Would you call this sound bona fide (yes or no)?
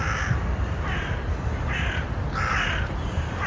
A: yes